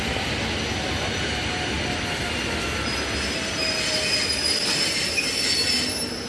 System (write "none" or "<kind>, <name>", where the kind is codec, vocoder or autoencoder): none